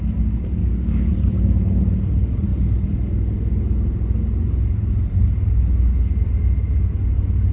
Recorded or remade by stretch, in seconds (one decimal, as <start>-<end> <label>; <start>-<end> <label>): 0.0-0.6 recorded; 0.6-1.1 remade; 1.1-7.5 recorded